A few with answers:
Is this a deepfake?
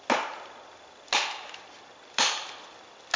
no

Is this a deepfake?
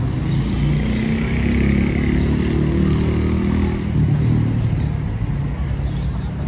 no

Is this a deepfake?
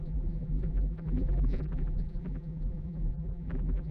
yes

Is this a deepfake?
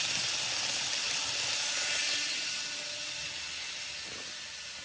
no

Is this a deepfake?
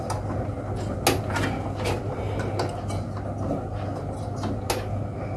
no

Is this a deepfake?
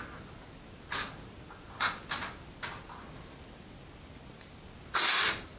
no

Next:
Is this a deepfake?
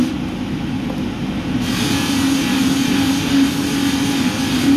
no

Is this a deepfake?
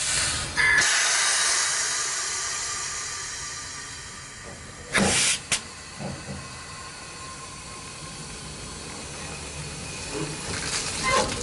no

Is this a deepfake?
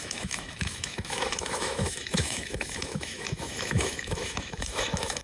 yes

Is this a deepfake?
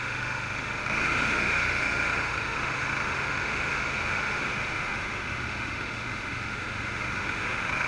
yes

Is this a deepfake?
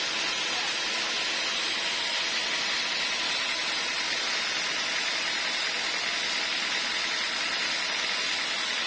no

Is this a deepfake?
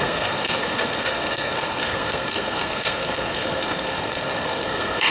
yes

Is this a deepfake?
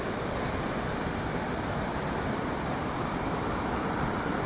yes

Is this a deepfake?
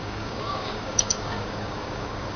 yes